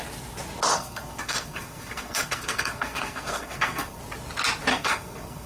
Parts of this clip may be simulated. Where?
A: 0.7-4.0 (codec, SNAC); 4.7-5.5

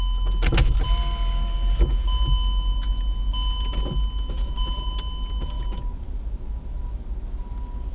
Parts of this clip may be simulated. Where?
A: none

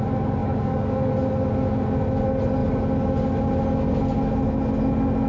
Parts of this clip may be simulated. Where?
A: 0.4-1.1 (codec, DAC)

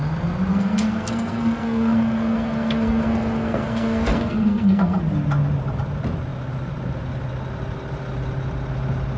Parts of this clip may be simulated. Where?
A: 0.5-5.0 (codec, SNAC)